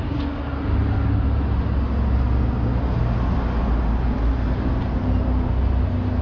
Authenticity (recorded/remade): recorded